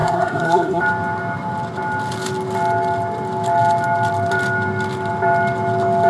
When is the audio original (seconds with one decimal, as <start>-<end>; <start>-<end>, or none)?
0.8-6.1